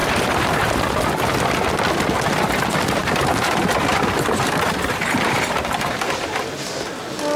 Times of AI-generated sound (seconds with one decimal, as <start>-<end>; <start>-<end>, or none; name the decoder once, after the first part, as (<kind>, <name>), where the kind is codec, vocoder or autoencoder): 0.0-0.7 (vocoder, BigVGAN v2); 3.0-6.1

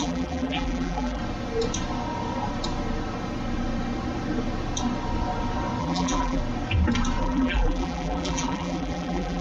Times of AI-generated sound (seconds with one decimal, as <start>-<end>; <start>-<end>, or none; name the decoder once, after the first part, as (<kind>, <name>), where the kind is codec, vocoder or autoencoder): 0.0-1.2 (vocoder, BigVGAN v2); 5.8-6.4; 7.2-9.4

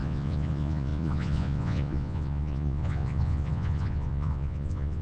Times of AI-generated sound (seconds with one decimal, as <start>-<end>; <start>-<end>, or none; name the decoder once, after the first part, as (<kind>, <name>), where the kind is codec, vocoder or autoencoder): 0.0-5.0 (vocoder, Vocos)

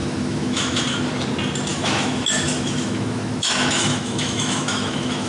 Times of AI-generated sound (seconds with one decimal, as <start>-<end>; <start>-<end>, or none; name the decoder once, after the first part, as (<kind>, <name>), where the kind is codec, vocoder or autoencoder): 0.0-0.8 (autoencoder, DAC-VAE); 1.7-5.3

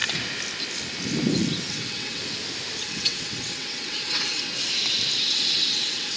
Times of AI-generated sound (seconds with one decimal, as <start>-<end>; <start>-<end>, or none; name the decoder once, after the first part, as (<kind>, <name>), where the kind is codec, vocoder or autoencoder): 1.7-2.2 (vocoder, WaveNeXt); 2.8-4.5; 5.2-6.2

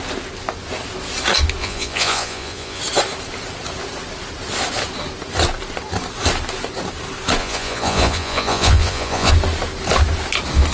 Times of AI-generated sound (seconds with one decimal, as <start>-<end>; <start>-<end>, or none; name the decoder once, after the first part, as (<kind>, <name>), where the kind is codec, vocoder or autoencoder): 1.6-2.8 (vocoder, Vocos); 7.4-9.3

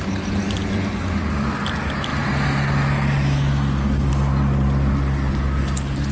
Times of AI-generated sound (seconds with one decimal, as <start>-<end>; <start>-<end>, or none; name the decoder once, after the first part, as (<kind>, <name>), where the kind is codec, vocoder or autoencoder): none

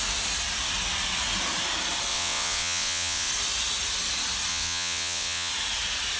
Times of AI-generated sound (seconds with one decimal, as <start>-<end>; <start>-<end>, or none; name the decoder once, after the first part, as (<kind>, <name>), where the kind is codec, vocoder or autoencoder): 2.1-3.3 (vocoder, WaveNeXt); 4.5-5.5